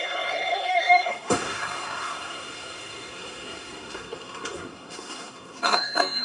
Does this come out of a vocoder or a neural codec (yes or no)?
yes